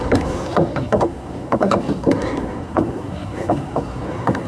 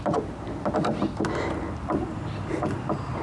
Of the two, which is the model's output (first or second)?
first